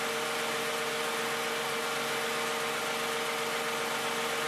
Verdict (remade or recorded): recorded